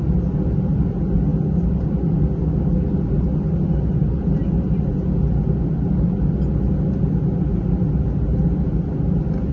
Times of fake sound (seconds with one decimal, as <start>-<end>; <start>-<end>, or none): none